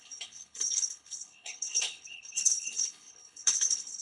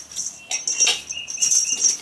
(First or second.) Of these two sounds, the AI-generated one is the first